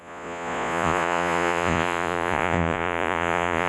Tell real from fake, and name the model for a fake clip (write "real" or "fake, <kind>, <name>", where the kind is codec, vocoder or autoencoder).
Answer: fake, vocoder, Vocos